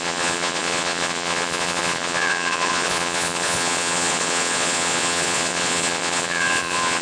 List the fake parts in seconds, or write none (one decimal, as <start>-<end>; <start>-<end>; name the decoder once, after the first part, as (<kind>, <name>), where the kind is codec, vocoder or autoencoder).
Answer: 0.0-7.0 (vocoder, Vocos)